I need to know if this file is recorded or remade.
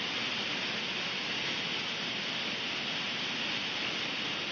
recorded